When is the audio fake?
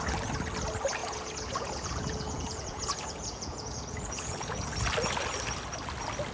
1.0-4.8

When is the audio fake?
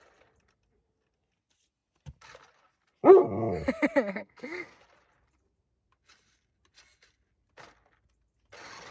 4.1-4.8